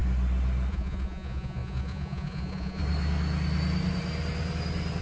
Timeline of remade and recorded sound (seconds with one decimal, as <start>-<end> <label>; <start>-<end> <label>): 0.0-0.7 recorded; 0.7-2.8 remade; 2.8-5.0 recorded